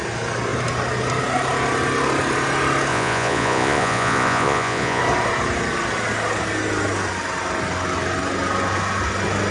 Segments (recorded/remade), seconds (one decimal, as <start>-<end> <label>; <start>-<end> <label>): 0.0-2.9 recorded; 2.9-5.0 remade; 5.0-9.5 recorded